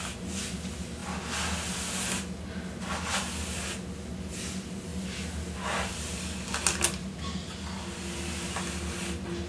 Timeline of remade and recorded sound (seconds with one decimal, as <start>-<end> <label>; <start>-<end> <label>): 0.0-9.5 recorded